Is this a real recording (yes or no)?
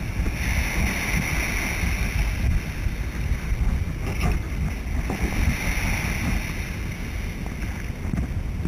yes